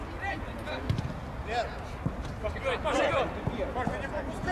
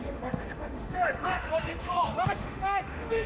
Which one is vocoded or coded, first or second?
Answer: second